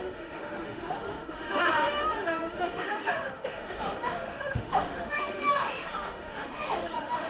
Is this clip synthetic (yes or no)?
yes